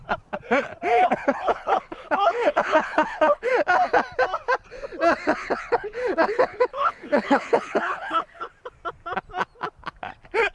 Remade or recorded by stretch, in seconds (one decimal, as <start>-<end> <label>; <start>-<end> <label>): 0.0-0.9 recorded; 0.9-3.5 remade; 3.5-5.4 recorded; 5.4-8.5 remade; 8.5-10.5 recorded